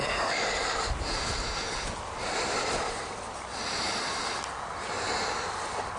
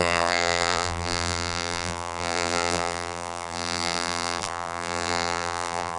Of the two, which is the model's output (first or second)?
second